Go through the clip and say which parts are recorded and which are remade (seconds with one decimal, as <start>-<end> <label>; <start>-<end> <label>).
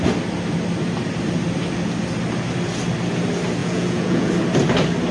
0.0-3.6 recorded; 3.6-4.3 remade; 4.3-5.1 recorded